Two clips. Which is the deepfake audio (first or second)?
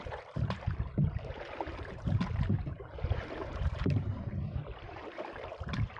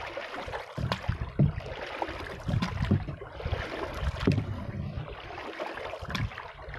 first